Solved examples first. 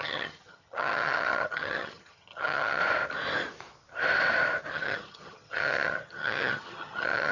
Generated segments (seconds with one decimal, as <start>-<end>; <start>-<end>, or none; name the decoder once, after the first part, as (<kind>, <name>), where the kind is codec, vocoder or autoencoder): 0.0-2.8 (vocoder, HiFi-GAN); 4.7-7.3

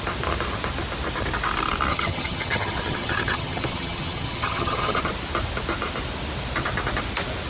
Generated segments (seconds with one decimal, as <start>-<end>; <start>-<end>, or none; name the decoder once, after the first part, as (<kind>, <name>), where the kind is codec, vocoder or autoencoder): 1.9-5.0 (vocoder, HiFi-GAN)

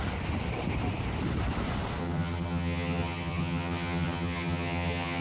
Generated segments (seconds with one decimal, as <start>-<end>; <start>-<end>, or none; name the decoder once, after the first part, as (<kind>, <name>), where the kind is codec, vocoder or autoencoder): 2.0-5.2 (vocoder, HiFi-GAN)